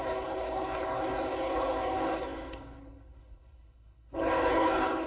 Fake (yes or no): yes